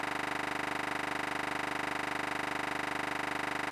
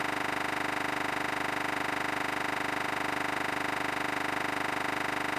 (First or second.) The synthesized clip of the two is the second